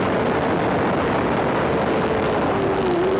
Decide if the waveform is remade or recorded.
recorded